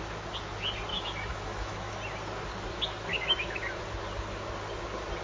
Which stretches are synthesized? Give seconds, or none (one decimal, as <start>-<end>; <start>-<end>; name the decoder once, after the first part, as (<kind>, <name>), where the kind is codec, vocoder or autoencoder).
0.9-1.9 (autoencoder, DAC-VAE); 3.1-3.8